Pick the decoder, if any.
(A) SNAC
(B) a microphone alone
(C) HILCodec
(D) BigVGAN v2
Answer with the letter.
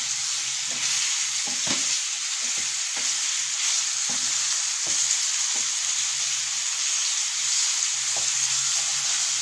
B